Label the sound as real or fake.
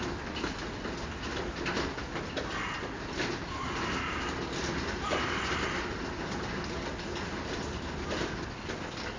real